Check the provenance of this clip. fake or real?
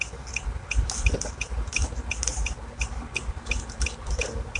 fake